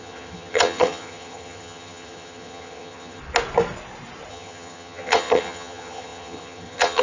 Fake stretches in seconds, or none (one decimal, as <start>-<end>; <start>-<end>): 0.0-3.2; 4.3-7.0